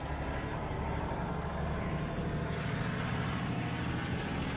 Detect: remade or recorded recorded